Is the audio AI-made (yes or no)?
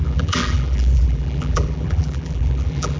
yes